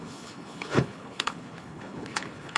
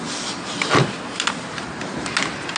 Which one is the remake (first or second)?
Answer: first